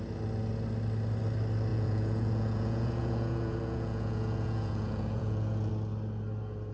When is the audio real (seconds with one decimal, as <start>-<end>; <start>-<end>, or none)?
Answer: 0.0-1.7; 5.7-6.7